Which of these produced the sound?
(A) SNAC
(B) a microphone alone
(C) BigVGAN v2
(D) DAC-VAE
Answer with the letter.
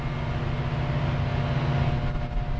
B